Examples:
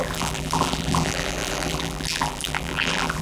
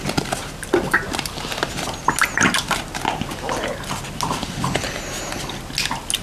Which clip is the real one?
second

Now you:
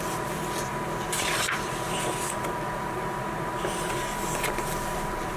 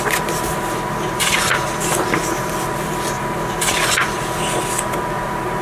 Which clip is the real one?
second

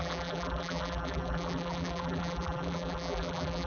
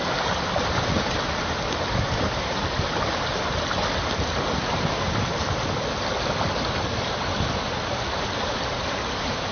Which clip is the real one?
second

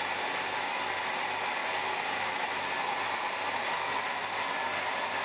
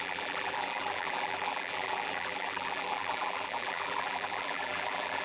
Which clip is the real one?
first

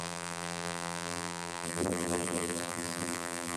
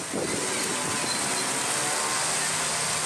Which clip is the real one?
second